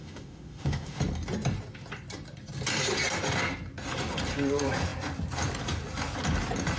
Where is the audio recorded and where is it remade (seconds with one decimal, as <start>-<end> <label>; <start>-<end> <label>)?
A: 0.0-1.0 remade; 1.0-6.8 recorded